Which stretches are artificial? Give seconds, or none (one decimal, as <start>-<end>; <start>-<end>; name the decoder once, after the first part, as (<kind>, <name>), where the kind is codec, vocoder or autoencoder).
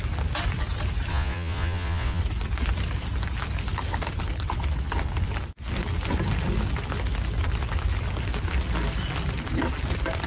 1.1-2.2 (vocoder, Vocos)